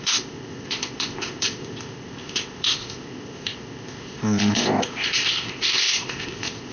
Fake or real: fake